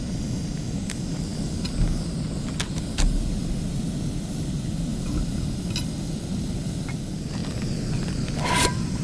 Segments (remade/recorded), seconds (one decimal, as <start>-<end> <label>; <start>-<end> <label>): 0.0-9.0 recorded